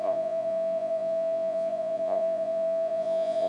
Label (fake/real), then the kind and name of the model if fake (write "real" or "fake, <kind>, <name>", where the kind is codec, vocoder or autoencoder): fake, vocoder, Vocos